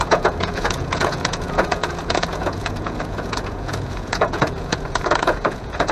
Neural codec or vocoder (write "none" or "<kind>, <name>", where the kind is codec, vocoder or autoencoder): vocoder, Vocos